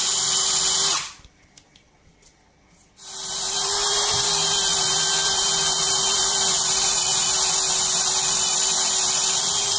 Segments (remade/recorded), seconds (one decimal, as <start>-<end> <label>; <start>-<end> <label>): 0.0-7.1 remade; 7.1-8.0 recorded; 8.0-9.8 remade